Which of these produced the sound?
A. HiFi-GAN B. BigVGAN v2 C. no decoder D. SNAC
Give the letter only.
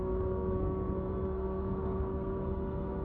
D